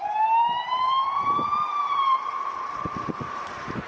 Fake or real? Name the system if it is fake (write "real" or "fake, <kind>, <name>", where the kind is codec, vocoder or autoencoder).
fake, vocoder, BigVGAN v2